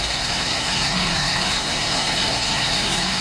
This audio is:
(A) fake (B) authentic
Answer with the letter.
A